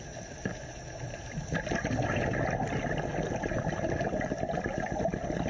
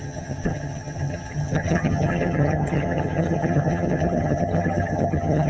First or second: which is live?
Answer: first